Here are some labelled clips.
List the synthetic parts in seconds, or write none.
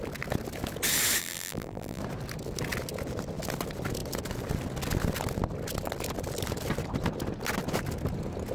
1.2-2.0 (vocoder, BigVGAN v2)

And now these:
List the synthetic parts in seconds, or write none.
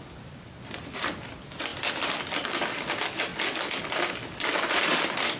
none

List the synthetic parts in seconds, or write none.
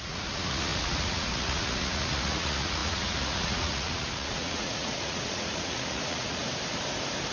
0.0-6.4 (vocoder, Vocos)